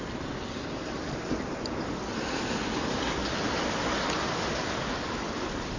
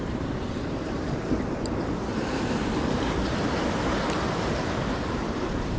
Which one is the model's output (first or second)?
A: second